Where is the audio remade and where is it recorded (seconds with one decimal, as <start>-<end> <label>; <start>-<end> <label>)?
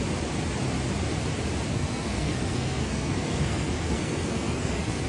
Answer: 0.0-1.7 recorded; 1.7-5.1 remade